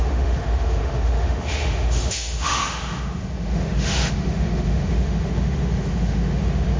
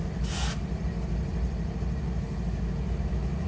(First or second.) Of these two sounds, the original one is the second